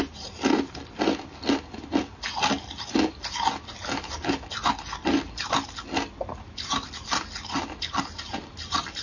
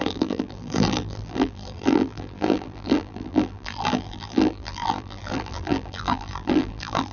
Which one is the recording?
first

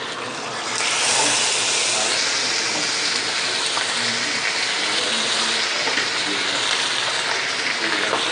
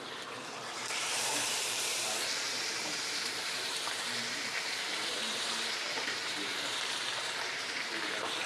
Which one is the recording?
first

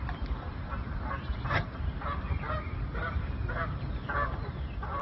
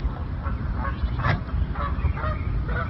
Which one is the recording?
second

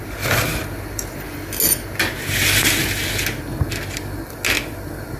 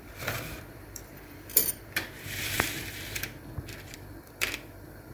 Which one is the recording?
first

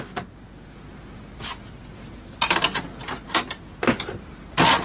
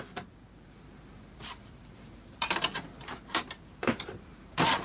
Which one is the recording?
first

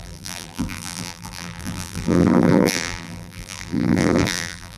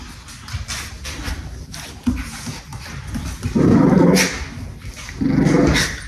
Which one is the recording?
second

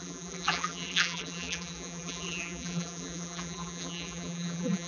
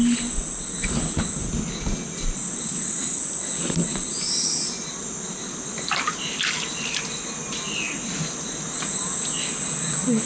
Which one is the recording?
second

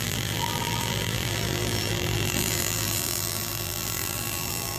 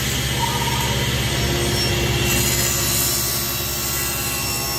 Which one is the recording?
second